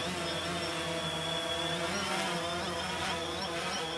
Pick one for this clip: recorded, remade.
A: recorded